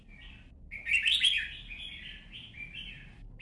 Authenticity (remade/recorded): recorded